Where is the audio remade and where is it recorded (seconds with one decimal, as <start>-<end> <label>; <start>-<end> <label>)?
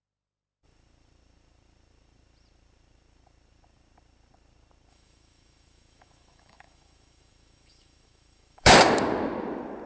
0.0-4.9 recorded; 4.9-8.8 remade; 8.8-9.9 recorded